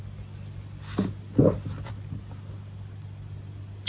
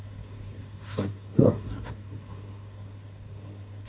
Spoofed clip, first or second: second